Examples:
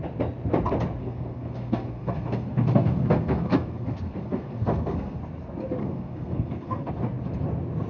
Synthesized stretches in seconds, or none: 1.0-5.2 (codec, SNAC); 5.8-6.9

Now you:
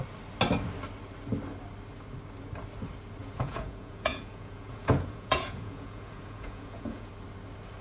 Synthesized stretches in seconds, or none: 3.2-7.1 (vocoder, Vocos)

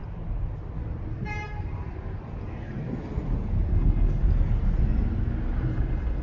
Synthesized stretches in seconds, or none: 3.7-4.2 (codec, HILCodec); 5.7-6.2

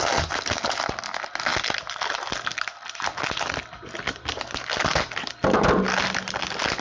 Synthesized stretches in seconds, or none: none

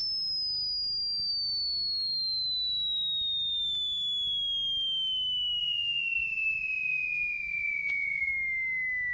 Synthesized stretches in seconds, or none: 5.6-8.3 (vocoder, Vocos)